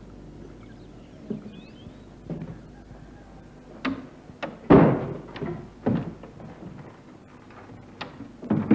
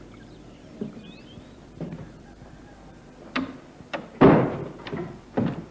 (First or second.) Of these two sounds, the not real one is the second